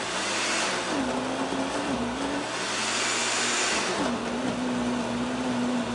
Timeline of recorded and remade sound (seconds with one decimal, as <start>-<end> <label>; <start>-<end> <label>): 0.0-5.9 recorded